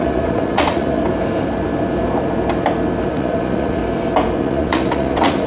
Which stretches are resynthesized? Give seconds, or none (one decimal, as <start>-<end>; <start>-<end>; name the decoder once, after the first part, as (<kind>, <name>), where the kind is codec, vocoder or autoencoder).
0.0-1.0 (vocoder, Vocos); 3.1-3.8; 4.4-5.5